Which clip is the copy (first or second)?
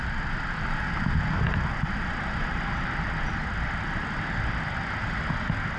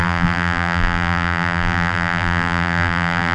second